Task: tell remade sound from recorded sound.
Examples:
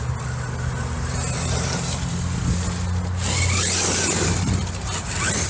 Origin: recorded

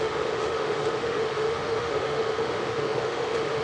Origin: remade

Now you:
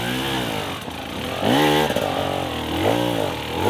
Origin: recorded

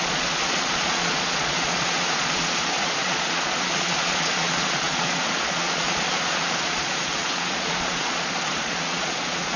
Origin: remade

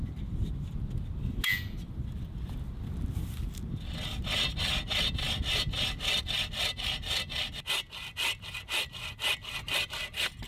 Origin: recorded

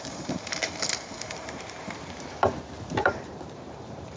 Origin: remade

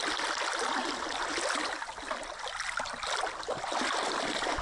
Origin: recorded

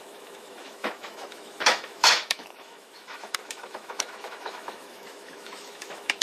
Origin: remade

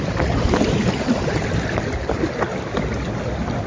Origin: recorded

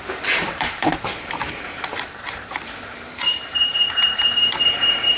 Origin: remade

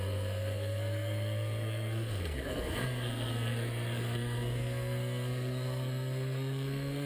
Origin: remade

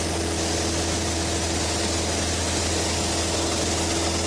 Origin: recorded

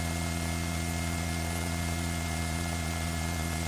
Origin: recorded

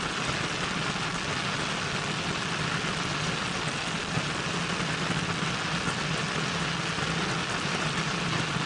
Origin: recorded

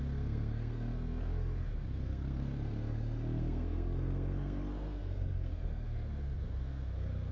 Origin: remade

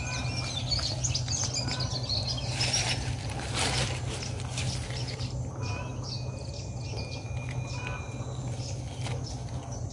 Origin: recorded